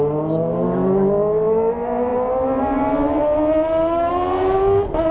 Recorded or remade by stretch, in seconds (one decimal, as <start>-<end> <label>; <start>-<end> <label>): 0.0-5.1 recorded